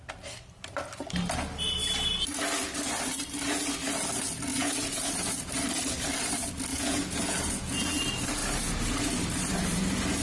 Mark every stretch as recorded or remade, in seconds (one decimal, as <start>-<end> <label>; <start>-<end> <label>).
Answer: 0.0-4.5 recorded; 4.5-5.1 remade; 5.1-6.7 recorded; 6.7-7.9 remade; 7.9-10.2 recorded